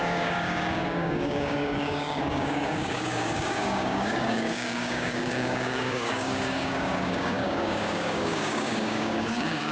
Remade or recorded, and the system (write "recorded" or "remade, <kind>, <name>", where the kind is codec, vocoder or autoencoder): remade, codec, DAC